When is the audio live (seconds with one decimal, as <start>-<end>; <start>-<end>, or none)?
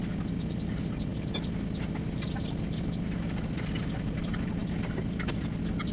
0.0-5.9